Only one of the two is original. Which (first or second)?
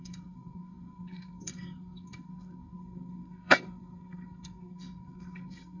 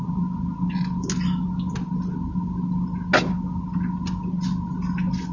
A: second